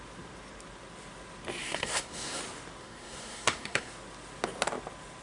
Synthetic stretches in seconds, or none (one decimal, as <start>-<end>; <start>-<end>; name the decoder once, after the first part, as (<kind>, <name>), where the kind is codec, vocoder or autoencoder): 1.6-2.4 (codec, SNAC); 2.8-3.9